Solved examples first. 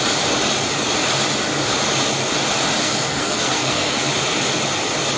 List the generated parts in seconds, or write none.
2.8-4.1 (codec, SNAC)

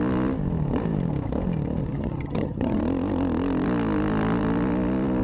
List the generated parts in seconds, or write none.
1.8-2.8 (vocoder, HiFi-GAN)

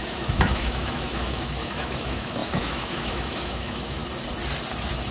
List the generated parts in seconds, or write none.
0.0-4.0 (autoencoder, DAC-VAE)